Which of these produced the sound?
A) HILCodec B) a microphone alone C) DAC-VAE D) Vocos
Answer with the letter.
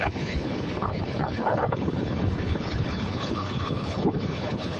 A